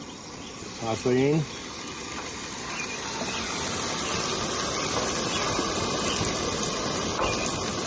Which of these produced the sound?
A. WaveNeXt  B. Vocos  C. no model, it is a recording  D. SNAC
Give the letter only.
C